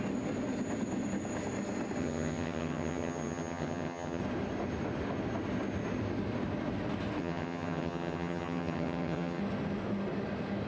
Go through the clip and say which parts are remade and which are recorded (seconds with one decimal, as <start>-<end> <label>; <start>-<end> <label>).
0.0-2.0 recorded; 2.0-4.2 remade; 4.2-7.2 recorded; 7.2-9.4 remade; 9.4-10.7 recorded